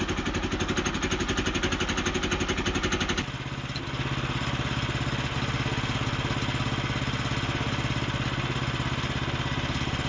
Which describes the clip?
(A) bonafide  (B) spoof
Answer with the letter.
A